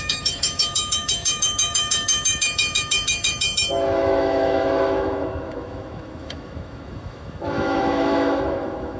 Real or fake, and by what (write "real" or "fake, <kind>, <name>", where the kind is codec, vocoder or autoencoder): fake, autoencoder, DAC-VAE